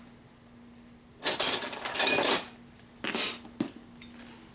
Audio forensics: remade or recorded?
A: recorded